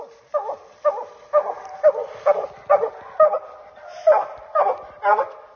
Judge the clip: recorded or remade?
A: recorded